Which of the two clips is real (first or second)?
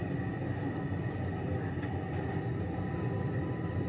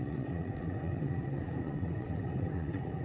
first